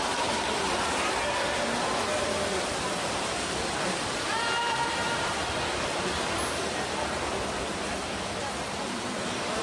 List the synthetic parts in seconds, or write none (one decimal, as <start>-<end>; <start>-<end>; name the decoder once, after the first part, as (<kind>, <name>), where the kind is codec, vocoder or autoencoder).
none